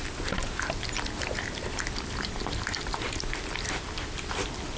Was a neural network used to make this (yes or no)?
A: no